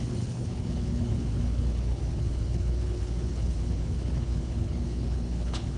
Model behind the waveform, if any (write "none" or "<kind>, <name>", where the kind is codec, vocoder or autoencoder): codec, HILCodec